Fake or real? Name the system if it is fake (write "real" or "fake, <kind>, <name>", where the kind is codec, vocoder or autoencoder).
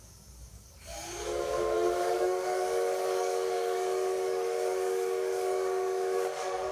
fake, codec, DAC